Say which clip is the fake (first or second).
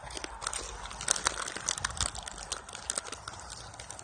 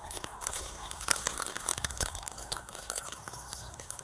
second